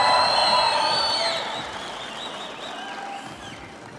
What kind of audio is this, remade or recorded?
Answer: recorded